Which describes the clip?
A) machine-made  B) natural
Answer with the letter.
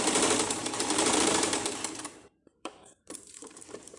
A